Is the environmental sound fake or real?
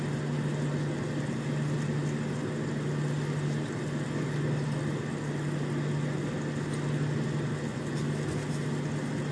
real